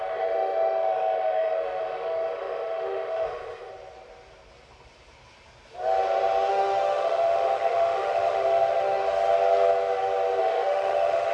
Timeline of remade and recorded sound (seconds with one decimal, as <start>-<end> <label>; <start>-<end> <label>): 0.0-3.7 remade; 3.7-6.5 recorded; 6.5-9.0 remade; 9.0-10.4 recorded; 10.4-11.3 remade